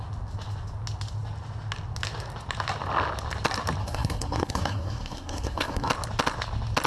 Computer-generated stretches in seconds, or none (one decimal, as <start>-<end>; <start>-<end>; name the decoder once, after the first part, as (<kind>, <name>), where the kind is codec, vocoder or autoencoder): 3.8-5.9 (codec, SNAC)